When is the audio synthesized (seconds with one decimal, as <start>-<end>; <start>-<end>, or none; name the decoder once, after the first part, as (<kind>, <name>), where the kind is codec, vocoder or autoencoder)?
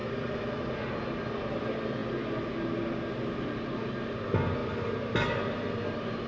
none